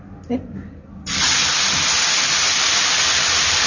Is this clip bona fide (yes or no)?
yes